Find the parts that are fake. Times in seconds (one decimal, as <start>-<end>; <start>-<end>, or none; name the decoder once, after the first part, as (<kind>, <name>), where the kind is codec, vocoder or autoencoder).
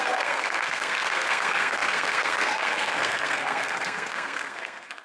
0.0-5.0 (codec, SNAC)